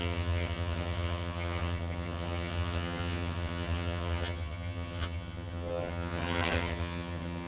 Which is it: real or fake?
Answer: fake